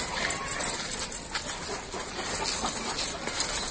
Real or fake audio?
real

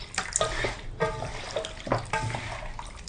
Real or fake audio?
real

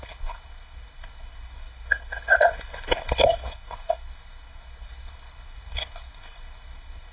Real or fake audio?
fake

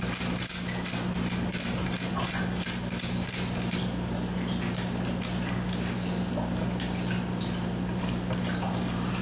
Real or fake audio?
real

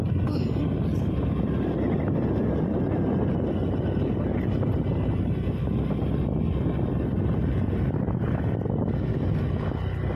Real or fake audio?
real